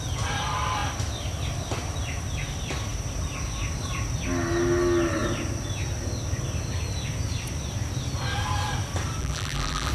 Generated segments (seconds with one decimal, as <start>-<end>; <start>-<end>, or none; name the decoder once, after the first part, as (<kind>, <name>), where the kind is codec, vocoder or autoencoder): 9.2-9.9 (vocoder, BigVGAN v2)